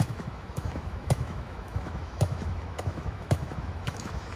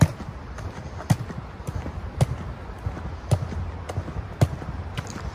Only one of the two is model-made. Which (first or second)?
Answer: first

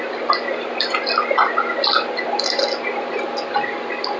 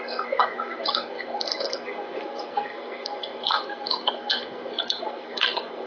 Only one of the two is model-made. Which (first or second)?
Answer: second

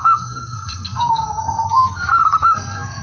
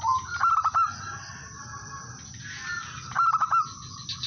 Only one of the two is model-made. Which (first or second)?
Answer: first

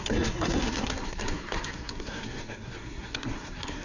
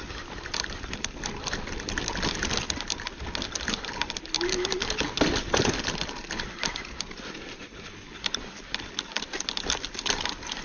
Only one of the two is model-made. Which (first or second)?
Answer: first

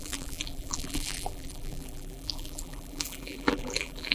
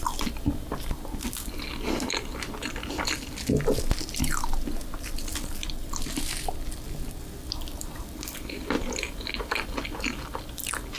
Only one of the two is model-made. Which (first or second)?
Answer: first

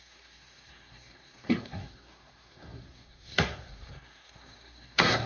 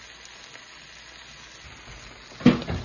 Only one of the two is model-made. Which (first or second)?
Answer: first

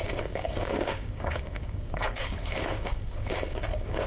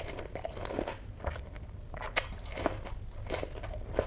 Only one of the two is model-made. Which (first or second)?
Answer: first